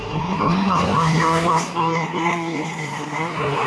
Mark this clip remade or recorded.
remade